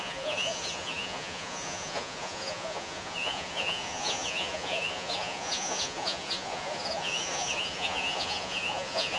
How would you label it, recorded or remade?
remade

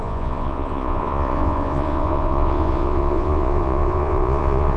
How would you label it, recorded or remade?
remade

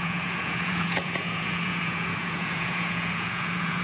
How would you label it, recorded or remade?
remade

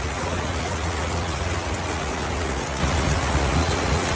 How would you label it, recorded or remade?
remade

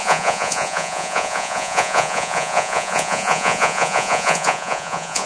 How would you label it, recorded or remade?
remade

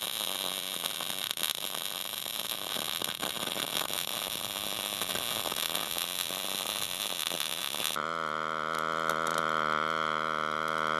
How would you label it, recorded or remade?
recorded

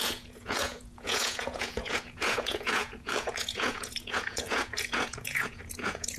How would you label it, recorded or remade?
remade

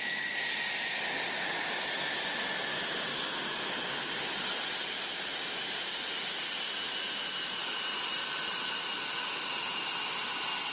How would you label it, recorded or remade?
recorded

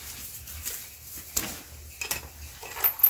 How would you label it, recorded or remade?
recorded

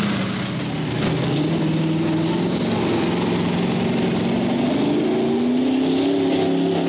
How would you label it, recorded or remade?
recorded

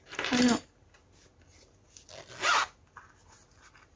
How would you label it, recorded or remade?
recorded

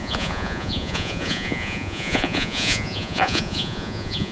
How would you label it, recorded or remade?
remade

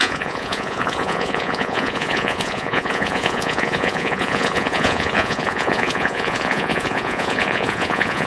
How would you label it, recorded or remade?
remade